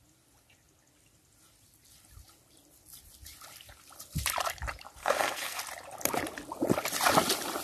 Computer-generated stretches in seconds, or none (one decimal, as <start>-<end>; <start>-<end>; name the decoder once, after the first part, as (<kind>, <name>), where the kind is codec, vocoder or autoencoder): 5.0-5.6 (codec, SNAC)